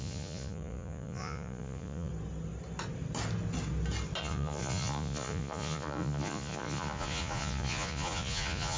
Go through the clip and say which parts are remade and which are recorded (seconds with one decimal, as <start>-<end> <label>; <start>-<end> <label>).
0.0-2.1 remade; 2.1-4.2 recorded; 4.2-8.8 remade